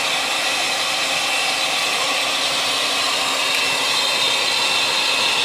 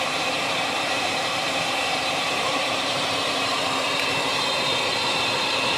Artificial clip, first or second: second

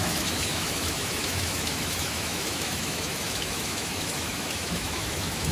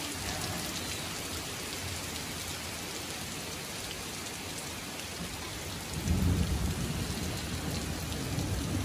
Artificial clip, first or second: first